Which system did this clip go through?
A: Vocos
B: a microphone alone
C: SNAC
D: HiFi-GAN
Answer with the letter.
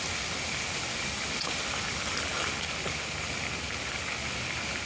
B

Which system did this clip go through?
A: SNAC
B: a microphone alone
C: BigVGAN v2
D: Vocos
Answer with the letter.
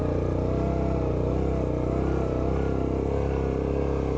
B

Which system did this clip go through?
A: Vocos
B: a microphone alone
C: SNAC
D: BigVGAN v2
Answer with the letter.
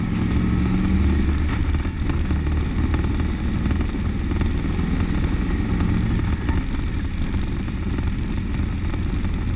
B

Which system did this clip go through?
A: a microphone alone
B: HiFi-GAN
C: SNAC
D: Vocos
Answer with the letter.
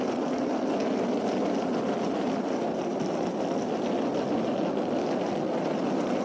A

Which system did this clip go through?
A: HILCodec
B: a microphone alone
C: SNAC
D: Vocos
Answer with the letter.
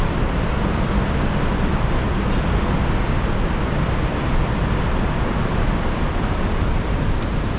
B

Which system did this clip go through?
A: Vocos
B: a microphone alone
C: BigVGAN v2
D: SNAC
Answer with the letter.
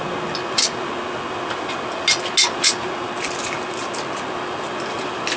B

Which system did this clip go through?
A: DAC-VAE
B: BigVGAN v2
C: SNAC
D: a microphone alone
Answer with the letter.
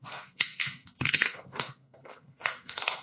C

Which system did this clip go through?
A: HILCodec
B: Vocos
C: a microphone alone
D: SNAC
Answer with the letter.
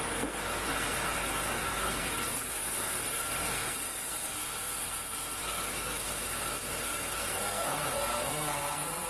D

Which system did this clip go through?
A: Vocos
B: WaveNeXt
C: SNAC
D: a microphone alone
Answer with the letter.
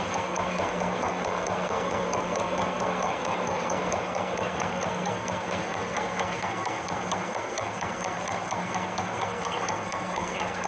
C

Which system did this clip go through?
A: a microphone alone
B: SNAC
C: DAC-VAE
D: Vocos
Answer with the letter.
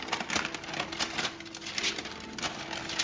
A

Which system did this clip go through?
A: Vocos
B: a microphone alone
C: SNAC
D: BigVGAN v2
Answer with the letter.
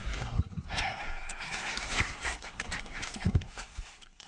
C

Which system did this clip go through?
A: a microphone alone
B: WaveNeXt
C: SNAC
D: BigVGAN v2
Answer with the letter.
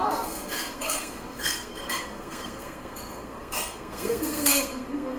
C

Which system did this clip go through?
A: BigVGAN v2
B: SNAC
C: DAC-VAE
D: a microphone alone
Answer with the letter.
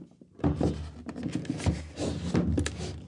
D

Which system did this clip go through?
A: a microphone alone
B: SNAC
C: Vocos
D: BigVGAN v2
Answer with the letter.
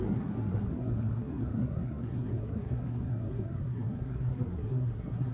B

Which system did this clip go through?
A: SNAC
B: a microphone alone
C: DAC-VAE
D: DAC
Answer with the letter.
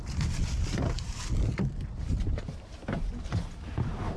B